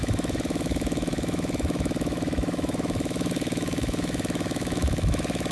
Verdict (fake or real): fake